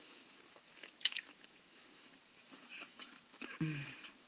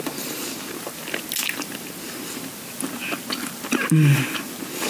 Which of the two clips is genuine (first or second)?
second